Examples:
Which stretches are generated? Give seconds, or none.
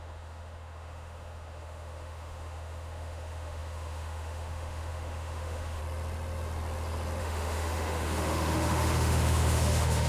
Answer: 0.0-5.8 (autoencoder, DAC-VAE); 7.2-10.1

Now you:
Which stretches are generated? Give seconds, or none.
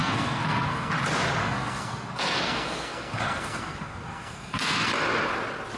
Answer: 0.0-0.9 (codec, SNAC); 1.4-4.9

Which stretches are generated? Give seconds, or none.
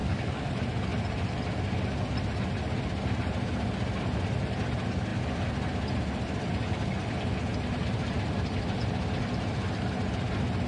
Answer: 0.0-0.5 (codec, DAC)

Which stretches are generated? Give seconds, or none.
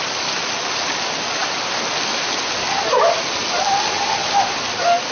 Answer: none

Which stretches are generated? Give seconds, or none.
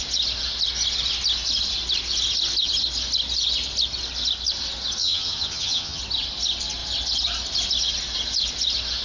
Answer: 5.0-6.0 (vocoder, HiFi-GAN)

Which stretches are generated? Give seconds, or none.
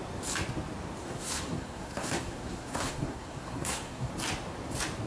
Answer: 1.0-4.1 (codec, SNAC)